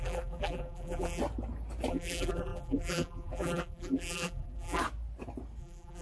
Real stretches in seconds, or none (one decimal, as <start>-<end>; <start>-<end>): 1.2-1.9; 4.8-5.6

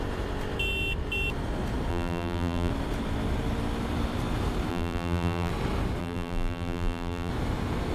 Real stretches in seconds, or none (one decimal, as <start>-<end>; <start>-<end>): 0.0-1.9; 2.7-4.7; 5.5-6.0; 7.3-7.9

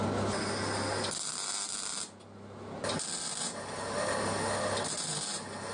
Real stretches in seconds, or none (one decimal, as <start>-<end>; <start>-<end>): 0.0-5.7

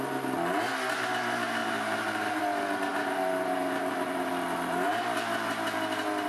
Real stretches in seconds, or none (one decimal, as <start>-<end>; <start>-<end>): 0.0-1.6; 2.4-2.9; 4.3-6.3

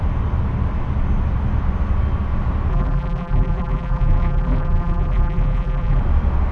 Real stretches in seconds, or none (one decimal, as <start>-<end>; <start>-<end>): 0.0-2.7; 6.0-6.5

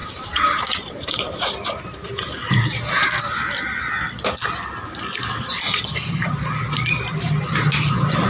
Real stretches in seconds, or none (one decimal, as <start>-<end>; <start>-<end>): 2.4-7.1

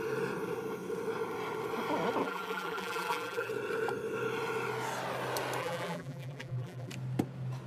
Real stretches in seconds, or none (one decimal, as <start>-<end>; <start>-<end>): 0.0-2.2; 3.5-5.6; 6.9-7.7

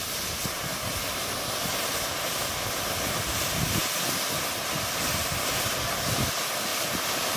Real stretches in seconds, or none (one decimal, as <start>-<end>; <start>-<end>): 3.8-5.3